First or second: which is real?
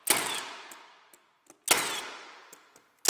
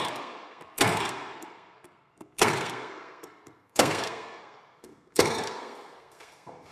first